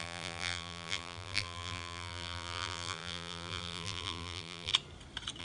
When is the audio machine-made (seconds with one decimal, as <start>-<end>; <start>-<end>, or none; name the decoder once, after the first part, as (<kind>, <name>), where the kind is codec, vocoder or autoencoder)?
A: 0.0-4.7 (vocoder, BigVGAN v2)